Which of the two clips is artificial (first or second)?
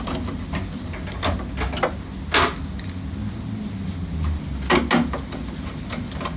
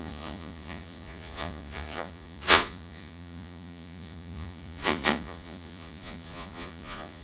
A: second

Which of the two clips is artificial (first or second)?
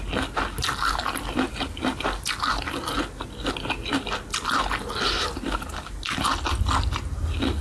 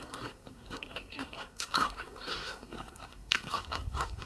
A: second